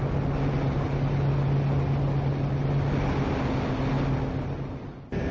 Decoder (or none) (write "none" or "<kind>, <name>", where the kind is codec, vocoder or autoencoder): none